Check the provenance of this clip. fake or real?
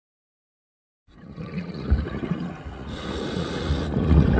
fake